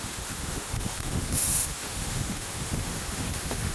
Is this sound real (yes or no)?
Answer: no